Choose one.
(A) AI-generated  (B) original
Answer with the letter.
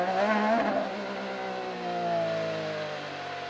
B